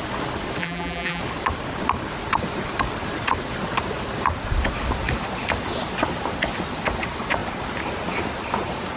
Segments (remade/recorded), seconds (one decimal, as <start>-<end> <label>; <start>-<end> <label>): 0.0-0.6 recorded; 0.6-1.2 remade; 1.2-9.0 recorded